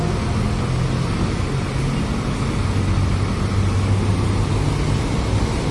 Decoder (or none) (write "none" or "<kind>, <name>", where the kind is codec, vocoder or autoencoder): none